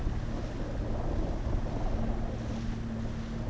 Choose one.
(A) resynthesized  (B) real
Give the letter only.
B